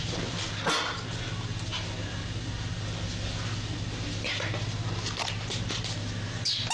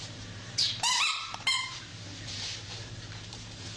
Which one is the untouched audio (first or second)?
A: first